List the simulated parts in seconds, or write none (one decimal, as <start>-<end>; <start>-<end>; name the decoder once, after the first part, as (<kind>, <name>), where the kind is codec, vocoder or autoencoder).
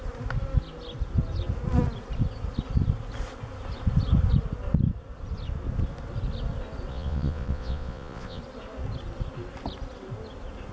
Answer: 6.9-8.4 (vocoder, Vocos)